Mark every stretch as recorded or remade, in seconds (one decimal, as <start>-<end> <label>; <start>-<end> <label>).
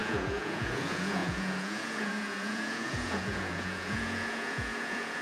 0.0-5.2 remade